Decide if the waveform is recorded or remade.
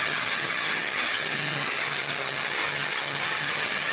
remade